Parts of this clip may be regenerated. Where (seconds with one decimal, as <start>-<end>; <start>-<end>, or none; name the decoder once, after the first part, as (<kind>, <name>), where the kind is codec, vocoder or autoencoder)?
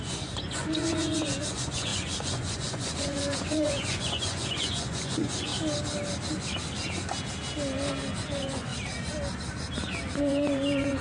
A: 0.0-5.5 (vocoder, Vocos); 8.1-8.7; 10.2-11.0